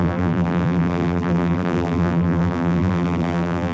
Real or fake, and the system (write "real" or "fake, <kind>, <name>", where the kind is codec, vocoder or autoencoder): fake, vocoder, BigVGAN v2